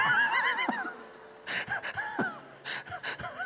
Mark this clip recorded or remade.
remade